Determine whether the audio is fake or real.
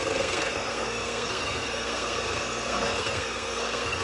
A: fake